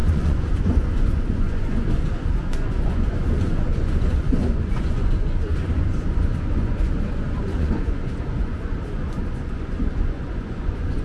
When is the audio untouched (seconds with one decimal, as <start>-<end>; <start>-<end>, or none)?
none

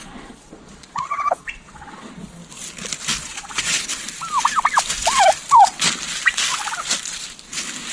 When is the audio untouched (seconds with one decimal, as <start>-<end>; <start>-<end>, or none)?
2.4-3.2; 3.9-7.9

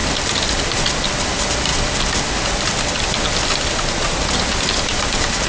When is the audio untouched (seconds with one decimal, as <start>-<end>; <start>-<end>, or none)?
0.0-5.5

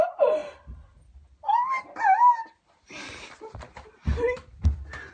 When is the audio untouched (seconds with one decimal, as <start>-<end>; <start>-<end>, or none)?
0.0-5.1

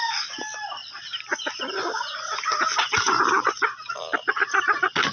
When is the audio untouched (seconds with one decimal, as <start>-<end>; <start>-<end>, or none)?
0.0-5.1

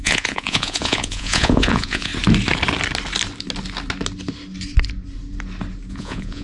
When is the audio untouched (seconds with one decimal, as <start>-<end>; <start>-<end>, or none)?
2.1-5.9

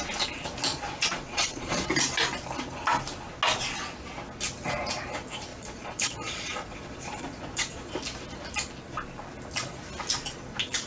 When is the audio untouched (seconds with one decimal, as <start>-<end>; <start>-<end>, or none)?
0.0-0.7; 1.9-5.5; 7.9-10.9

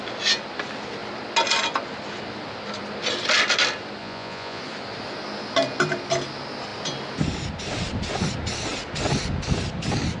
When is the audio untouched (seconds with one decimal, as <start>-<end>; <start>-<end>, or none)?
0.0-4.0; 4.6-10.2